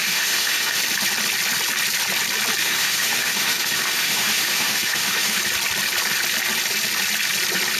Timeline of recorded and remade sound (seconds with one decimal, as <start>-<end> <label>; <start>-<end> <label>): 0.0-0.8 remade; 0.8-2.6 recorded; 2.6-5.4 remade; 5.4-7.8 recorded